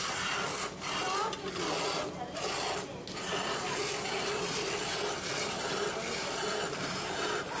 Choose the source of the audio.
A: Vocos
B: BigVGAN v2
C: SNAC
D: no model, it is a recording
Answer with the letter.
D